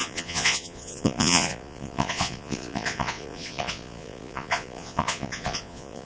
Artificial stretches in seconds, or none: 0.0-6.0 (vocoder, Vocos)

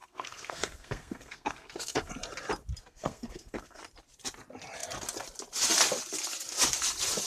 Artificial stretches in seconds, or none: 0.0-2.1 (codec, SNAC); 2.8-3.8

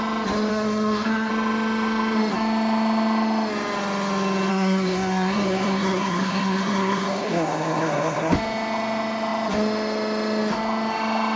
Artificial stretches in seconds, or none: 0.5-1.3 (codec, SNAC); 4.5-8.3

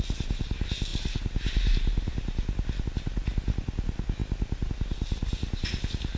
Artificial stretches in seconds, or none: none

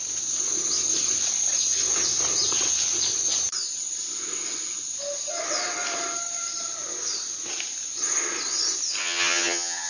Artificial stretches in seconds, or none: 9.0-9.9 (vocoder, HiFi-GAN)

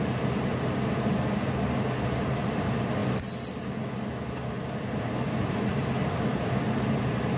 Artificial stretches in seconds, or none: 0.0-3.0 (vocoder, BigVGAN v2); 4.8-7.4

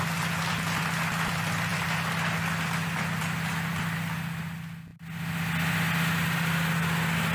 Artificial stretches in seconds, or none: none